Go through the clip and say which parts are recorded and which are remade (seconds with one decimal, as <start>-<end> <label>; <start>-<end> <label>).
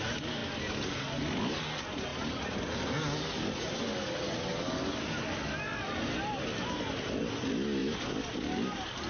0.0-9.1 recorded